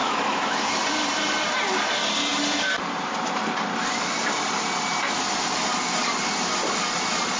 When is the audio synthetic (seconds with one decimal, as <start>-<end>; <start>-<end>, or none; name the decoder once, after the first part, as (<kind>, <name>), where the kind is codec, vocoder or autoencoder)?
0.0-0.6 (autoencoder, DAC-VAE)